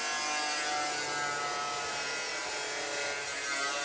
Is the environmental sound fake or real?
real